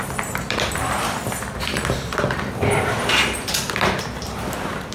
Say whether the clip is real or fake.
fake